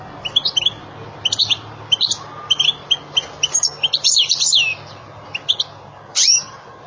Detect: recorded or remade recorded